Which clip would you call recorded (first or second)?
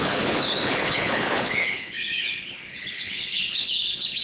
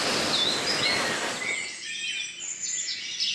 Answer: second